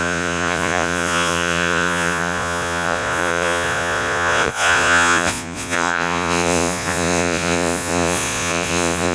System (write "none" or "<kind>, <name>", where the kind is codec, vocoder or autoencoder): vocoder, Vocos